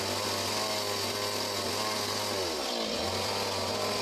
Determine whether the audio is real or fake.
real